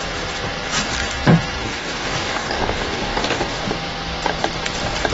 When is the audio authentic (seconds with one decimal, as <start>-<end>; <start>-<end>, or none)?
0.0-1.6; 3.6-5.1